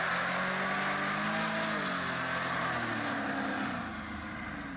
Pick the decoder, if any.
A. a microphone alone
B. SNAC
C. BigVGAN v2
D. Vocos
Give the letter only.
A